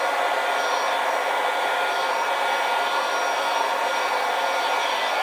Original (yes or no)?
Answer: yes